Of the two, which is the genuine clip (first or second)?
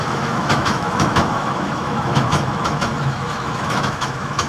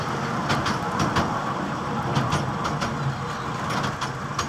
second